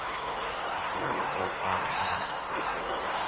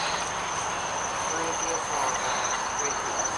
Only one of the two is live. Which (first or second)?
second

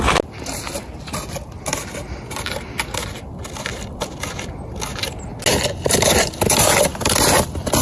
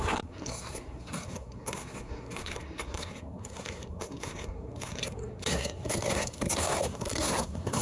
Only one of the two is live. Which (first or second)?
first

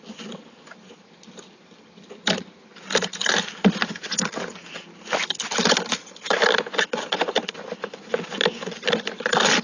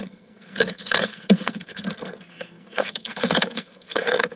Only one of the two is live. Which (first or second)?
first